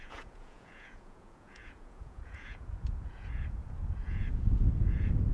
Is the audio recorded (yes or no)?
no